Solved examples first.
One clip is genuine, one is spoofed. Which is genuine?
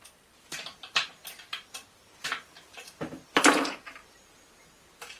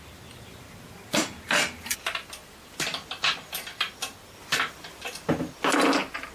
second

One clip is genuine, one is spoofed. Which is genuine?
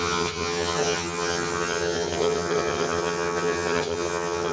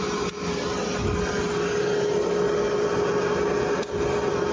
second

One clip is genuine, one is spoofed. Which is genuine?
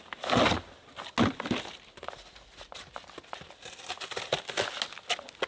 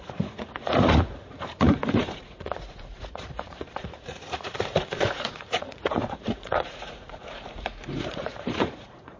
first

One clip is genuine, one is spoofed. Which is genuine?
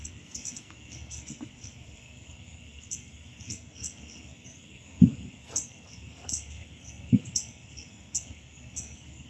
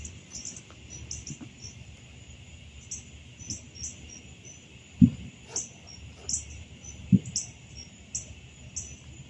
second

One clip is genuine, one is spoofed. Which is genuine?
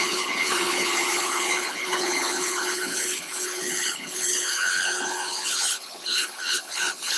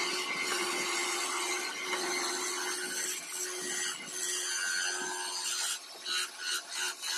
second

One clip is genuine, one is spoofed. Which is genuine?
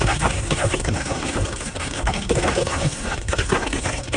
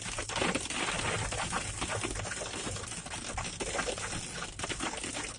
second